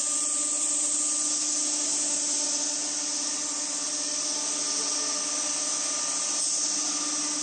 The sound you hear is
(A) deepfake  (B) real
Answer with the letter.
B